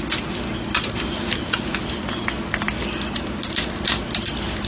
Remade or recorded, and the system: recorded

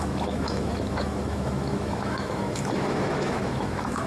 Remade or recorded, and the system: remade, autoencoder, DAC-VAE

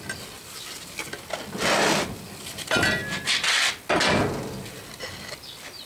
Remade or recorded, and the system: recorded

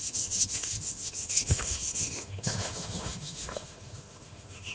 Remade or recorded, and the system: remade, autoencoder, DAC-VAE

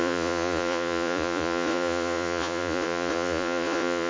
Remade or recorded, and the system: remade, vocoder, Vocos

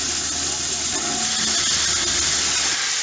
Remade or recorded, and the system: recorded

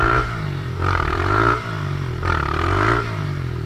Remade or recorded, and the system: remade, vocoder, BigVGAN v2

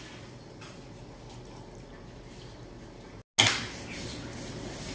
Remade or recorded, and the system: recorded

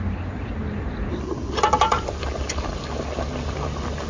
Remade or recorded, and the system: recorded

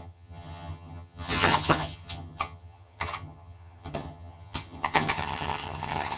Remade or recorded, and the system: remade, vocoder, HiFi-GAN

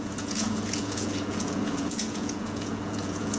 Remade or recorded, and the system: remade, vocoder, Vocos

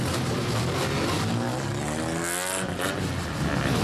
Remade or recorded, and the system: recorded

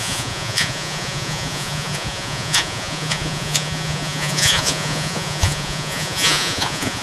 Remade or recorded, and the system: remade, vocoder, Vocos